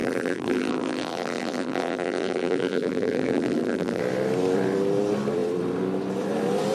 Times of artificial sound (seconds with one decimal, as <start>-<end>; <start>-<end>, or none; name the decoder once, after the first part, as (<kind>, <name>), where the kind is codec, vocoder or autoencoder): 0.0-4.0 (vocoder, BigVGAN v2)